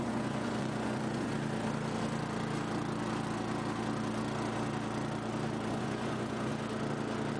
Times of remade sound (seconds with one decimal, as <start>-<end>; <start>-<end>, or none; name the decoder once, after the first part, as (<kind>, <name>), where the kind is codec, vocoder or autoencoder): 0.0-1.3 (vocoder, Vocos); 5.7-6.5